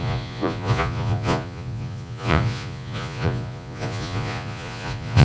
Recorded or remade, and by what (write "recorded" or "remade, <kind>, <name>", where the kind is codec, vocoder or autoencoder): remade, vocoder, Vocos